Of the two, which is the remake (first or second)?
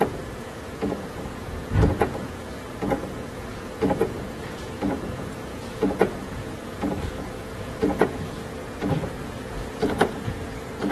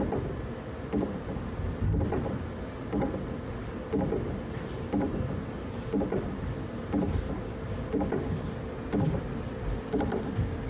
first